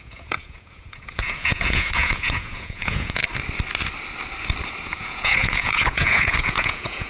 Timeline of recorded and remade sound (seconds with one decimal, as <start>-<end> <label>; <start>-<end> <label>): 0.0-3.2 remade; 3.2-4.8 recorded; 4.8-7.1 remade